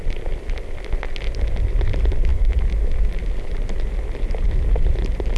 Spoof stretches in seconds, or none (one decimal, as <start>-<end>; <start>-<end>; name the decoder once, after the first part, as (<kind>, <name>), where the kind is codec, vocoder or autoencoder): none